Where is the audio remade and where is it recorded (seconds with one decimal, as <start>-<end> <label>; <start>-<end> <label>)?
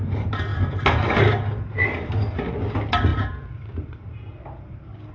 0.0-0.5 recorded; 0.5-1.2 remade; 1.2-3.1 recorded; 3.1-5.1 remade